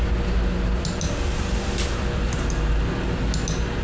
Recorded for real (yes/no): yes